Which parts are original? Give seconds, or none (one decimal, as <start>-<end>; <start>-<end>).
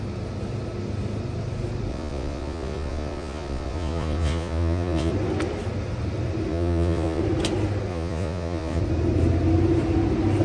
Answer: 0.0-1.9; 5.1-6.5; 7.2-7.9; 8.8-10.4